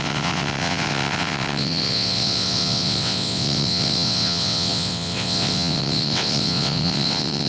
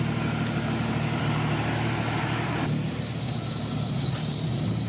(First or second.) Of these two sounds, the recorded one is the second